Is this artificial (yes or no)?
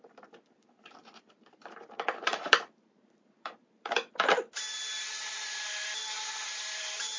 yes